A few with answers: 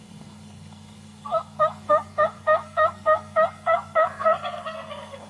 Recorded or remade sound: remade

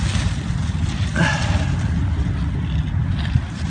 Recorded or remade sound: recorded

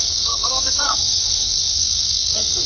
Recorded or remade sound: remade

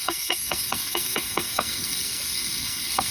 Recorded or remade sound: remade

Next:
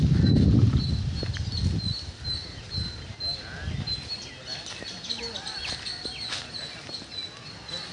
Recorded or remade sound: recorded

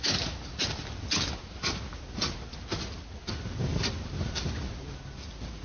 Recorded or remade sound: recorded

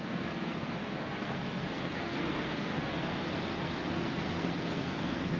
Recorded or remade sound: remade